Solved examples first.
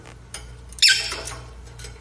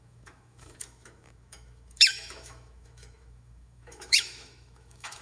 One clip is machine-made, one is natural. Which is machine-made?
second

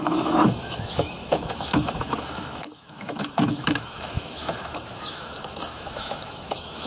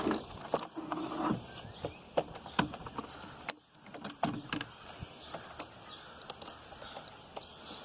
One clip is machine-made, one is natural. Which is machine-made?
first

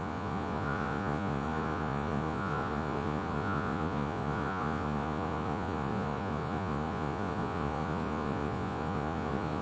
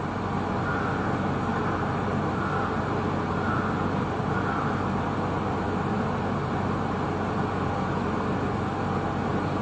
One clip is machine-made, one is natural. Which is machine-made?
first